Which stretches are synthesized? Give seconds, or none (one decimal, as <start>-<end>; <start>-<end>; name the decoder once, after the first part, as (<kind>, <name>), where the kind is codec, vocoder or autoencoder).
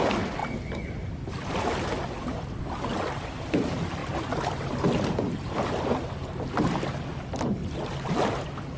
none